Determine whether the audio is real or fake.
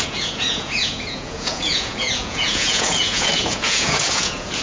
fake